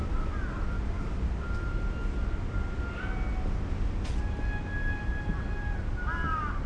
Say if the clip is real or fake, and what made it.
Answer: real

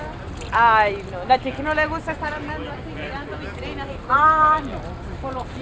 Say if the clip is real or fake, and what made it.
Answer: real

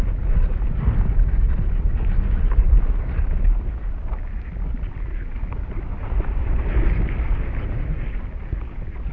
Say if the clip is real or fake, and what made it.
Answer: real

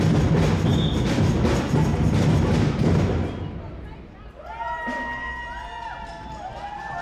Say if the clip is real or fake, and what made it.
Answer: real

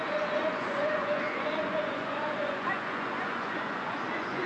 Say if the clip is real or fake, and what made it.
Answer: fake, vocoder, Vocos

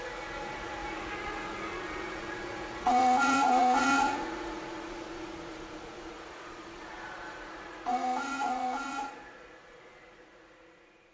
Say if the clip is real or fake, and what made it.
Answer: fake, vocoder, Vocos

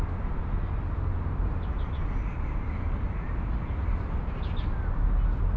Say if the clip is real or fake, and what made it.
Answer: real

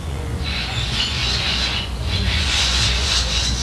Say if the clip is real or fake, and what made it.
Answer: fake, vocoder, Vocos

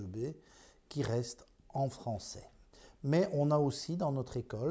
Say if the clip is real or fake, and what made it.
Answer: real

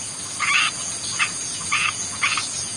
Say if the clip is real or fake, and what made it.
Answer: fake, vocoder, Vocos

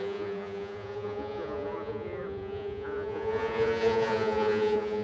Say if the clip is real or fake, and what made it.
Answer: fake, vocoder, Vocos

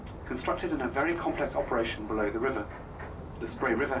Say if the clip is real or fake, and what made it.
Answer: real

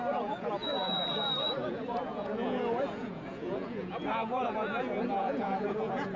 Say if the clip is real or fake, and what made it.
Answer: fake, vocoder, Vocos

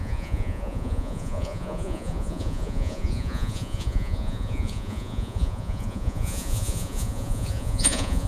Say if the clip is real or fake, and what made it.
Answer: fake, vocoder, Vocos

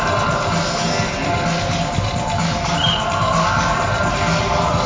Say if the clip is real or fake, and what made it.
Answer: real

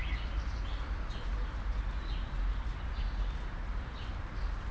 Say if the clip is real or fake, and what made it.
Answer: real